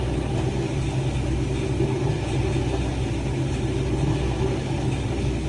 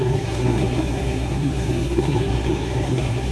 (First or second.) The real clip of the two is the first